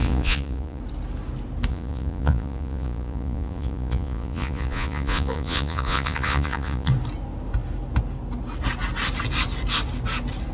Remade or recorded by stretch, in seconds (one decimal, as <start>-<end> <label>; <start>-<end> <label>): 0.0-0.8 remade; 0.8-1.7 recorded; 1.7-6.9 remade; 6.9-10.5 recorded